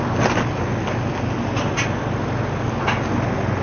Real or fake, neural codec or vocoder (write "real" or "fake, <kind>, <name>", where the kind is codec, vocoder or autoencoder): real